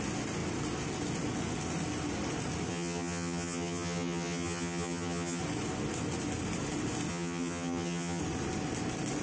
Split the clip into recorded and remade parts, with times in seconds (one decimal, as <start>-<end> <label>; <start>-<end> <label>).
0.0-2.7 recorded; 2.7-5.4 remade; 5.4-7.1 recorded; 7.1-8.2 remade; 8.2-9.2 recorded

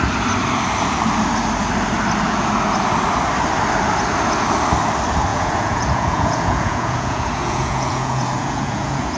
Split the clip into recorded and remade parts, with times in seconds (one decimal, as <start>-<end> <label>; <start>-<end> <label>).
0.0-5.3 recorded; 5.3-9.2 remade

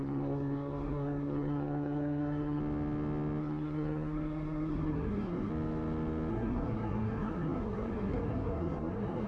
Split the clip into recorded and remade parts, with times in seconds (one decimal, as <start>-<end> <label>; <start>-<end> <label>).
0.0-2.6 remade; 2.6-3.4 recorded; 3.4-5.5 remade; 5.5-6.3 recorded; 6.3-9.3 remade

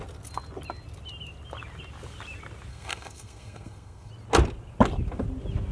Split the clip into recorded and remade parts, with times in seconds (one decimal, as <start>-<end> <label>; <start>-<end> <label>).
0.0-2.7 recorded; 2.7-4.1 remade; 4.1-5.7 recorded

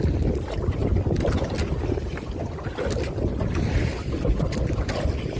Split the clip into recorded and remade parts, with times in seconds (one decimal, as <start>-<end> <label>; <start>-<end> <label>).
0.0-5.4 recorded

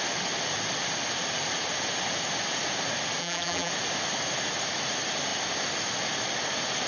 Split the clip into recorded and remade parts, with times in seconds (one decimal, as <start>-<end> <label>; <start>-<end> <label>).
0.0-3.2 recorded; 3.2-3.7 remade; 3.7-6.9 recorded